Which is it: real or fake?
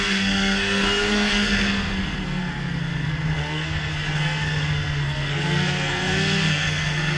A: fake